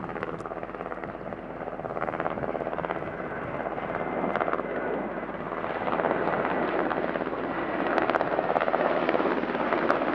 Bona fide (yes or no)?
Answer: yes